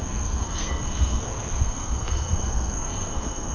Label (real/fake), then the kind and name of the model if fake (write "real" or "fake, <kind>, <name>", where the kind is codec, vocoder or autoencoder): fake, codec, SNAC